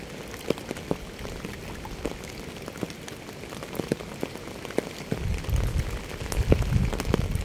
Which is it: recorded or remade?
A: recorded